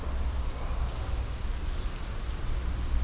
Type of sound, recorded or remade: recorded